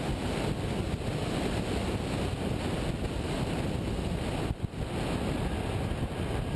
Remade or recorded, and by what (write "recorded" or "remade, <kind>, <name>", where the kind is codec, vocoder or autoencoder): recorded